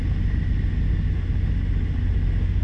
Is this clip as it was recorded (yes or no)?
yes